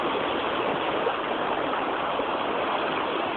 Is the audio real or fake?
real